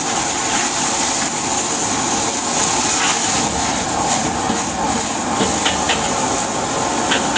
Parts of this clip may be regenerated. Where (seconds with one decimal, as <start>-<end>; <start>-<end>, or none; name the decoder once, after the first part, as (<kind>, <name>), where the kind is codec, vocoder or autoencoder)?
none